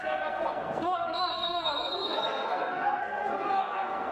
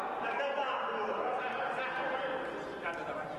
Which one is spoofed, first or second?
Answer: first